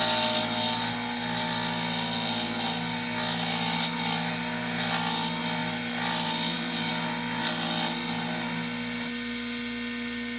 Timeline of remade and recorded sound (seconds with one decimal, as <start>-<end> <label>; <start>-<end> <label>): 0.0-5.6 recorded; 5.6-6.9 remade; 6.9-10.4 recorded